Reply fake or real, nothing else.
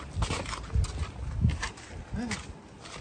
real